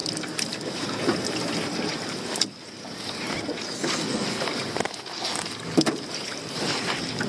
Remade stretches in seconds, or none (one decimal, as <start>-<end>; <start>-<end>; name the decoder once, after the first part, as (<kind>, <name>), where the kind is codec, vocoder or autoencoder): 0.0-0.7 (vocoder, BigVGAN v2)